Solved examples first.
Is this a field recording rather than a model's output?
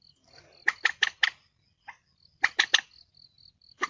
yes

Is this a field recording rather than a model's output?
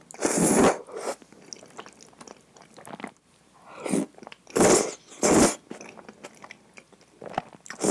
yes